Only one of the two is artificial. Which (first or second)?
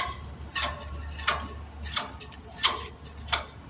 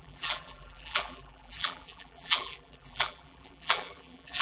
second